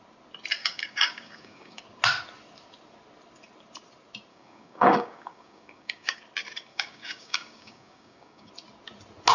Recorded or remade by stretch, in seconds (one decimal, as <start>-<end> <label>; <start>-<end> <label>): 0.0-0.6 recorded; 0.6-1.8 remade; 1.8-4.3 recorded; 4.3-6.2 remade; 6.2-6.7 recorded; 6.7-8.5 remade; 8.5-9.3 recorded